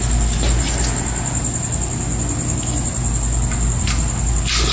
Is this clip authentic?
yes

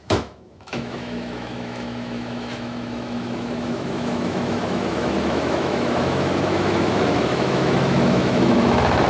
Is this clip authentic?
no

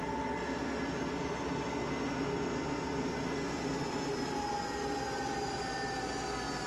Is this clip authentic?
yes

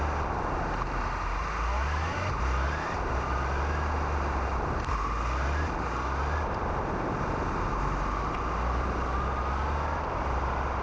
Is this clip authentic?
yes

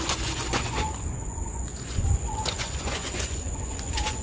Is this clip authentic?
no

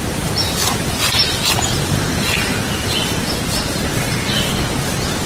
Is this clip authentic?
yes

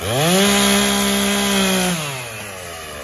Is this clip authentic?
yes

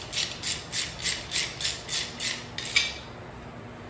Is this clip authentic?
yes